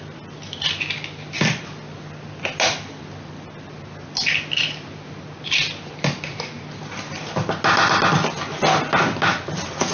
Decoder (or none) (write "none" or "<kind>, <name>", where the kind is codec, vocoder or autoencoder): none